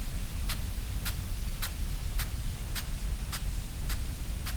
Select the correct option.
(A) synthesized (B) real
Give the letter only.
B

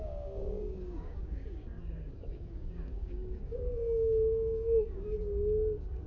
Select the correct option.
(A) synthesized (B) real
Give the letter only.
A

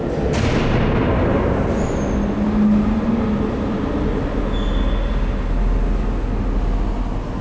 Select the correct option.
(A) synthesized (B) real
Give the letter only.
B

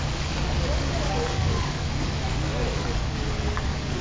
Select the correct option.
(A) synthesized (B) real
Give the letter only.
A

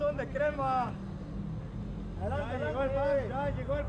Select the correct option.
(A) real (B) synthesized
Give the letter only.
A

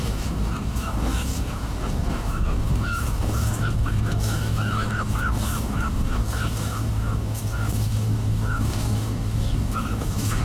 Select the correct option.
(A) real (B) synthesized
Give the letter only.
B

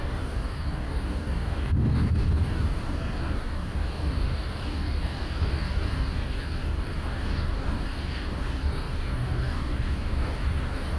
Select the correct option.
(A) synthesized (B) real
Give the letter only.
A